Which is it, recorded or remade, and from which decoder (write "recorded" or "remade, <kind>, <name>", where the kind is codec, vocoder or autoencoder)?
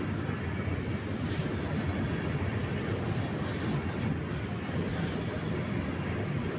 recorded